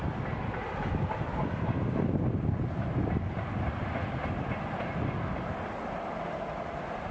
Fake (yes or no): no